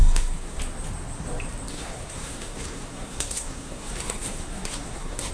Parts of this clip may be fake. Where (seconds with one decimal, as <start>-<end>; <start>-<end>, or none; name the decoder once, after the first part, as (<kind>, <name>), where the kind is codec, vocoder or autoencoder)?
0.0-0.6 (codec, SNAC); 1.7-5.3